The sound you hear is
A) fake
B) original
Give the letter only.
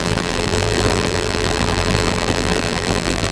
A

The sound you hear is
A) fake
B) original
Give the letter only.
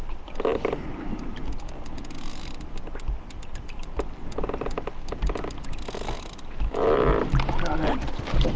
B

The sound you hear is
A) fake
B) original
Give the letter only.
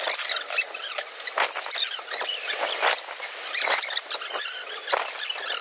B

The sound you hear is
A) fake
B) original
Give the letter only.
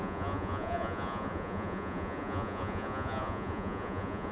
A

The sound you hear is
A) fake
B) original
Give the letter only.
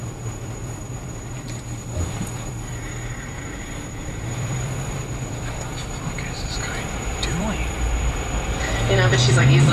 A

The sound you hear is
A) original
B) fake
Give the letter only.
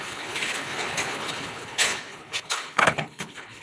B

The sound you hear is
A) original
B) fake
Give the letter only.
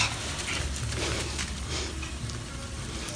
A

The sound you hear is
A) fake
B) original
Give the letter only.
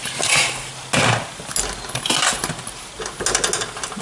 B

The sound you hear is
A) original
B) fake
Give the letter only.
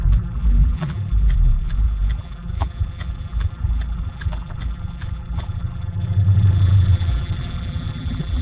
B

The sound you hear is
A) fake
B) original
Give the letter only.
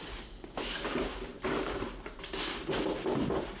B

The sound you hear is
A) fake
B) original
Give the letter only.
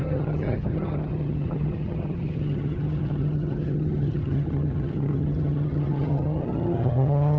A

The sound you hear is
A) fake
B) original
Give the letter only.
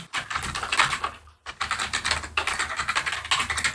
B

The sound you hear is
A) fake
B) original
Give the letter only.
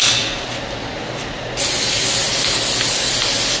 B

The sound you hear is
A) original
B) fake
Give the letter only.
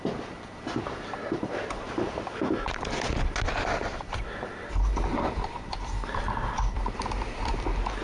A